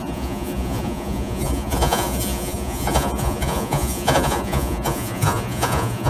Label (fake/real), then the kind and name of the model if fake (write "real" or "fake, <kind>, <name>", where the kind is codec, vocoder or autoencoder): fake, vocoder, Vocos